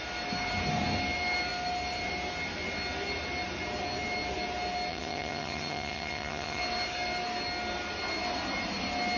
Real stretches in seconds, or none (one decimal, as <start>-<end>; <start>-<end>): 0.0-4.9; 6.6-9.2